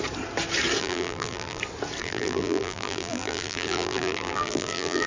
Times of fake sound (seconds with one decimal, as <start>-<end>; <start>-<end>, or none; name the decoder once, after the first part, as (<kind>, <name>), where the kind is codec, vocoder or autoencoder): 0.8-1.6 (vocoder, BigVGAN v2); 2.0-5.1